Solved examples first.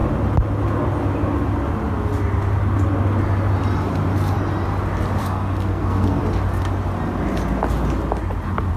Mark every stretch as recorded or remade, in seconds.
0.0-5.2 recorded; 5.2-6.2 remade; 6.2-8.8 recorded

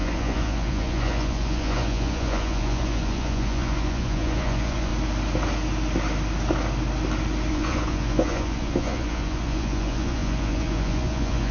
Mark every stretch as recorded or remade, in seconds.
0.0-4.9 remade; 4.9-7.5 recorded; 7.5-11.5 remade

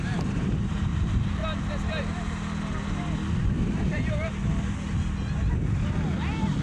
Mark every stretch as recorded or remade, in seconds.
0.0-1.4 remade; 1.4-3.5 recorded; 3.5-4.3 remade; 4.3-6.6 recorded

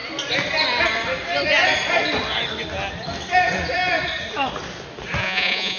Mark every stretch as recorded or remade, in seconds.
0.0-5.2 recorded; 5.2-5.8 remade

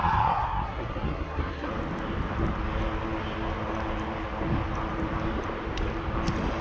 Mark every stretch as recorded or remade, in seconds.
0.0-1.7 remade; 1.7-6.6 recorded